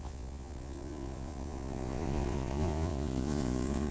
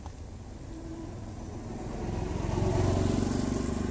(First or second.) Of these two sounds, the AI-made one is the first